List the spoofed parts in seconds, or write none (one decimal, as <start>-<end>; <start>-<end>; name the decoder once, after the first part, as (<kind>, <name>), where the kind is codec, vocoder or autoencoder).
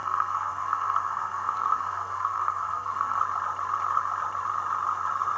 0.0-3.2 (codec, SNAC)